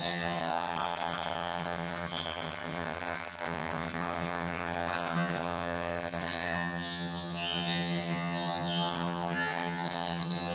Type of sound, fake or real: fake